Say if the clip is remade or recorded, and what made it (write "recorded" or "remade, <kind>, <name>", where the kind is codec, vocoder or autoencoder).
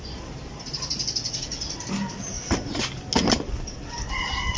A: recorded